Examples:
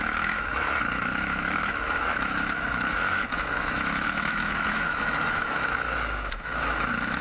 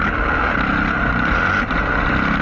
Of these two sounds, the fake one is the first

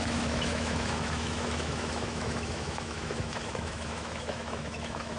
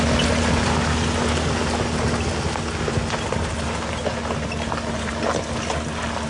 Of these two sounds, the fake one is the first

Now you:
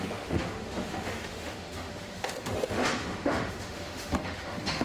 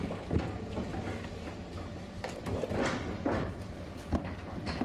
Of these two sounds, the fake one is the first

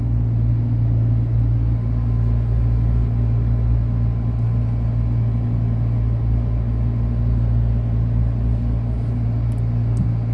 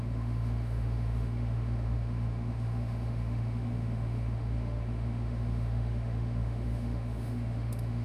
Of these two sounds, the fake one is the second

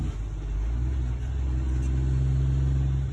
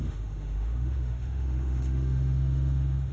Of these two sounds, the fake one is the second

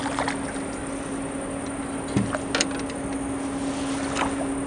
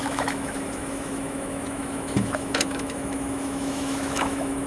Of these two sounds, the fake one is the second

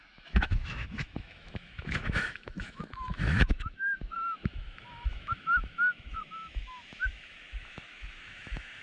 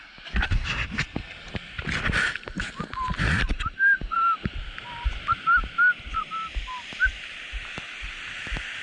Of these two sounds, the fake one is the first